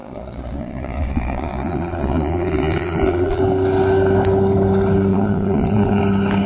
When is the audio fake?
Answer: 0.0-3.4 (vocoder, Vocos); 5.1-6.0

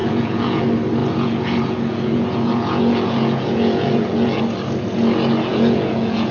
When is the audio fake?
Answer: 0.0-0.6 (vocoder, Vocos); 1.0-4.4; 5.5-6.3

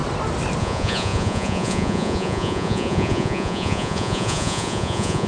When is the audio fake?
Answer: 0.6-5.3 (vocoder, Vocos)

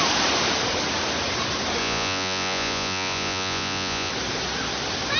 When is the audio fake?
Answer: 1.8-4.1 (vocoder, Vocos)

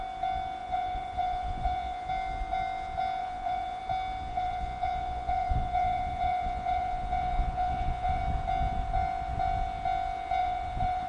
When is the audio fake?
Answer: 0.6-2.1 (vocoder, Vocos); 3.2-3.8; 4.3-8.2; 10.4-11.1

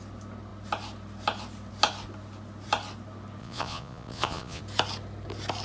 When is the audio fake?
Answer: 3.4-4.6 (vocoder, Vocos)

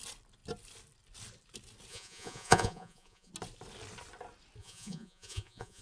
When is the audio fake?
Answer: 1.9-3.3 (vocoder, Vocos); 4.6-5.8